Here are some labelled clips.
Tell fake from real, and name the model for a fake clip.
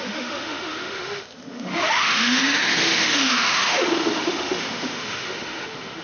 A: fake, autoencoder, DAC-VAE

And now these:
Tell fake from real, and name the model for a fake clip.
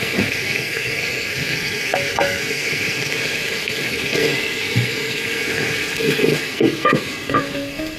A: fake, codec, SNAC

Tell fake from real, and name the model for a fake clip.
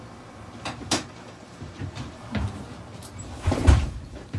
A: fake, vocoder, BigVGAN v2